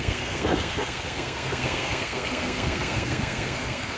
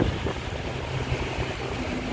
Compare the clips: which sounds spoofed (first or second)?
first